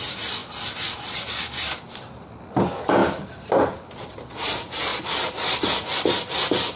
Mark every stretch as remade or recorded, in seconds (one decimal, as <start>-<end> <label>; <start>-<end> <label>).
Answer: 0.0-6.8 recorded